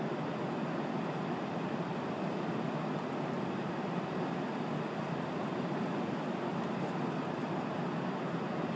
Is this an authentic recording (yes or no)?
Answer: yes